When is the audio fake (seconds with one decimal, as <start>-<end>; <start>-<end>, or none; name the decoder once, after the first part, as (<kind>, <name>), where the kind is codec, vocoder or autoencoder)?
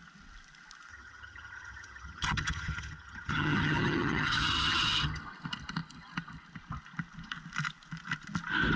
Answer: 0.9-5.2 (vocoder, HiFi-GAN)